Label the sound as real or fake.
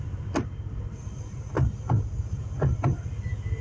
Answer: real